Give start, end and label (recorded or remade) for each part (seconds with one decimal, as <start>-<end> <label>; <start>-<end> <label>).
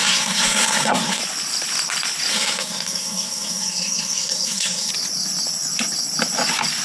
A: 0.0-1.2 remade; 1.2-2.3 recorded; 2.3-4.9 remade; 4.9-6.8 recorded